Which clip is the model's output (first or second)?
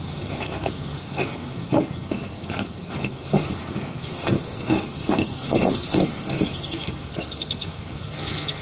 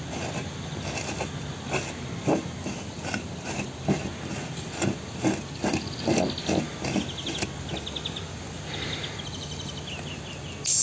first